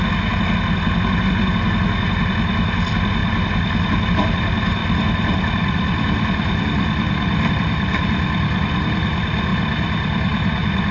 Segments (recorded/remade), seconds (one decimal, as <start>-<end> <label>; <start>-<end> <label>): 0.0-10.9 recorded